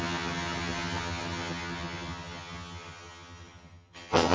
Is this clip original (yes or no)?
no